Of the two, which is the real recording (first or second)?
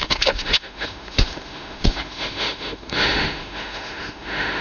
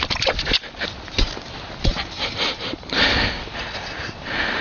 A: second